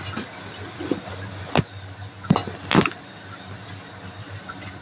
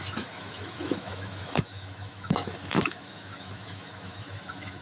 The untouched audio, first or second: first